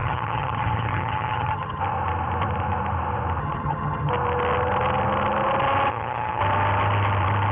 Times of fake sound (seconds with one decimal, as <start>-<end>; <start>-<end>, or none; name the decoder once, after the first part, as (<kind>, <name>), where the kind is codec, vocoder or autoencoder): 0.0-1.8 (vocoder, HiFi-GAN); 3.4-4.1; 5.9-6.4